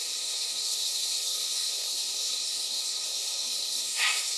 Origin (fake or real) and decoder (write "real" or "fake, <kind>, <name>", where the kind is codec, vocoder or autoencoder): fake, codec, SNAC